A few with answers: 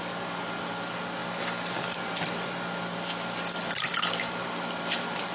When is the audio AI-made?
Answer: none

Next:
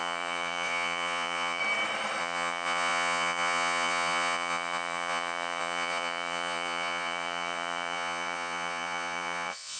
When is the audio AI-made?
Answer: 0.0-1.6 (vocoder, Vocos); 2.2-9.8

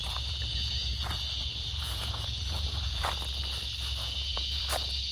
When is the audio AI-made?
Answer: 0.0-3.1 (vocoder, Vocos); 4.0-4.6

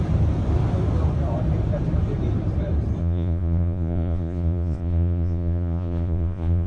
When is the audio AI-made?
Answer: 3.0-6.7 (vocoder, Vocos)

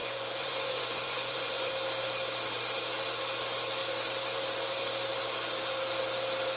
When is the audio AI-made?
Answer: 0.0-1.7 (vocoder, Vocos)

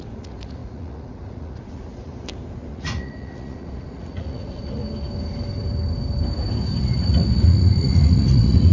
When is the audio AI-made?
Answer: 0.0-2.1 (vocoder, Vocos); 2.7-4.8; 6.8-8.7

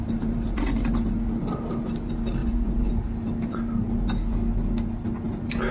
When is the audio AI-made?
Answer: 2.4-2.9 (vocoder, Vocos)

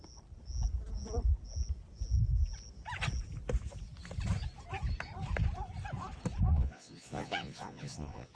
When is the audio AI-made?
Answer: 6.5-8.3 (vocoder, Vocos)